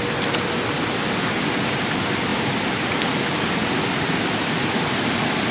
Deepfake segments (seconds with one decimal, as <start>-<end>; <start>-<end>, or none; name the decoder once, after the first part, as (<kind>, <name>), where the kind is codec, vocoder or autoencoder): none